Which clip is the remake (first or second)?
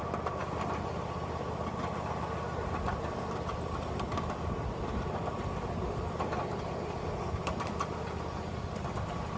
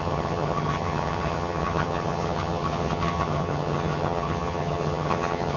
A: second